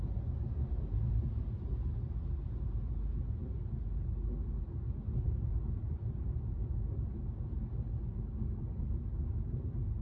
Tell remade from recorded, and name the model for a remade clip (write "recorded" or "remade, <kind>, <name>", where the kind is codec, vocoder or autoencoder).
recorded